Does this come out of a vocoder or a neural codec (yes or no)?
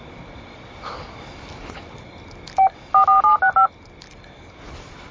no